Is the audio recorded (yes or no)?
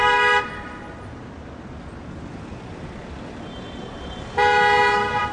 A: yes